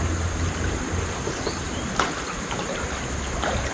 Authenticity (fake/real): real